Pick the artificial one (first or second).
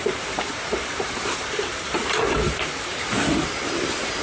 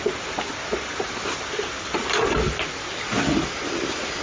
first